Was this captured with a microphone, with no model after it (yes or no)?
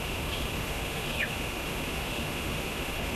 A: no